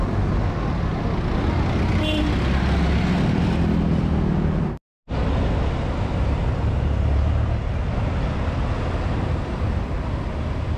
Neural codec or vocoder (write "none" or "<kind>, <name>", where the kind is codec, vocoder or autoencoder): none